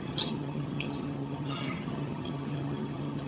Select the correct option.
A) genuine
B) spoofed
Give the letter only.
B